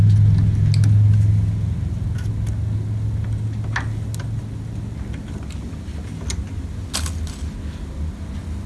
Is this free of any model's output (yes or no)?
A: yes